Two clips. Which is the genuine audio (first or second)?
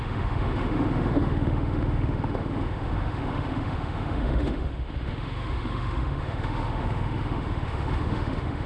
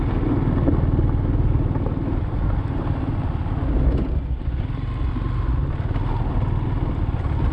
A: second